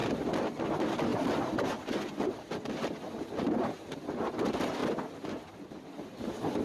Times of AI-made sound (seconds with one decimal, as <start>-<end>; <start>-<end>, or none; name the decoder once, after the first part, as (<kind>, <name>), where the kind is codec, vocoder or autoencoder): 0.0-4.8 (vocoder, BigVGAN v2); 5.7-6.6